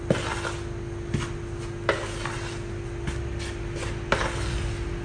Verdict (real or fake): real